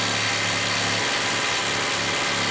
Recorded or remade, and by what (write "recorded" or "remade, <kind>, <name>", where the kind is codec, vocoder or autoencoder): recorded